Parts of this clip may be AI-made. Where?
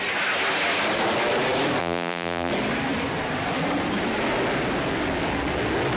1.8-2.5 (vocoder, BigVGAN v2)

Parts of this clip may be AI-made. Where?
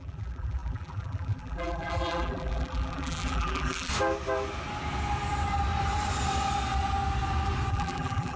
0.0-3.9 (vocoder, BigVGAN v2); 7.7-8.4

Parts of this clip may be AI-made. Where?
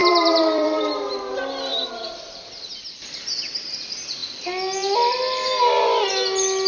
0.0-1.1 (vocoder, BigVGAN v2); 1.7-2.8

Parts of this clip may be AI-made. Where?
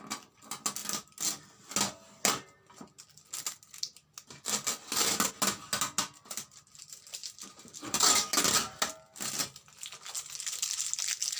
none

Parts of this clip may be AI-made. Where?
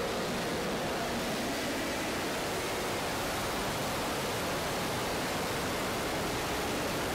none